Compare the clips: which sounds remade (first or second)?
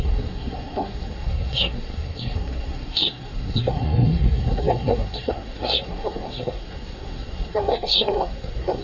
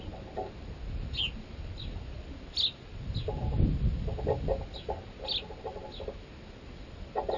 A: first